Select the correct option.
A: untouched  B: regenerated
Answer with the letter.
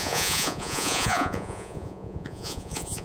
B